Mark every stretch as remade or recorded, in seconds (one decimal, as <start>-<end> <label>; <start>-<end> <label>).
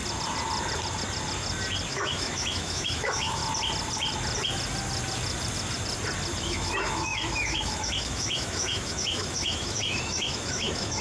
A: 0.0-1.9 recorded; 1.9-3.4 remade; 3.4-6.4 recorded; 6.4-11.0 remade